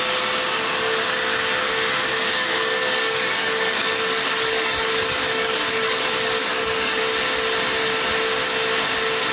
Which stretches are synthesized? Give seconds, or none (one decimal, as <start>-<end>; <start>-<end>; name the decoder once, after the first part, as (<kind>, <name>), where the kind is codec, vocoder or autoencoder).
2.1-7.0 (codec, DAC)